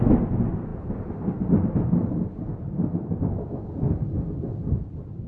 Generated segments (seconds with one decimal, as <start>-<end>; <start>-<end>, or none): none